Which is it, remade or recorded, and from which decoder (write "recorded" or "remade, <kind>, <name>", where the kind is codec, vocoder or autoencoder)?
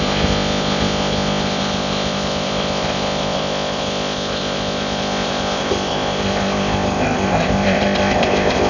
remade, codec, ZipCodec